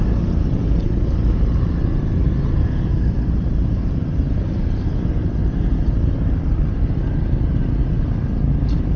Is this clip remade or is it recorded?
recorded